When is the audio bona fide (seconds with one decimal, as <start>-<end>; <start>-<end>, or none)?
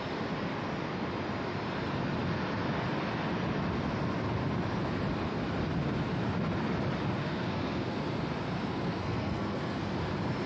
0.0-7.2; 8.0-8.7; 9.8-10.5